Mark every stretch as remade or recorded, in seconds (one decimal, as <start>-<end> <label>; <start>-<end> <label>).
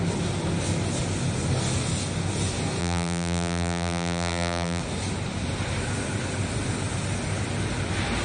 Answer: 0.0-2.8 recorded; 2.8-4.8 remade; 4.8-8.2 recorded